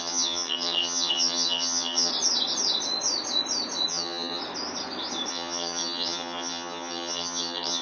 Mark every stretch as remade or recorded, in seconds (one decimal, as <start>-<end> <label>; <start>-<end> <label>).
0.0-2.1 remade; 2.1-3.9 recorded; 3.9-4.4 remade; 4.4-5.3 recorded; 5.3-7.8 remade